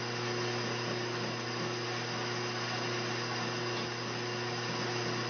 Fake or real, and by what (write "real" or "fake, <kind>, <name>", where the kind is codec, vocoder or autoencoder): real